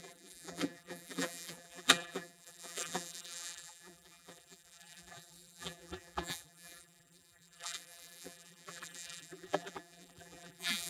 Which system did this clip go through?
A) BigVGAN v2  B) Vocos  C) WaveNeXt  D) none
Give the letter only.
A